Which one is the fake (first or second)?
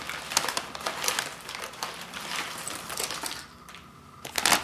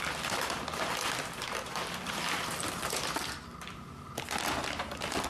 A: second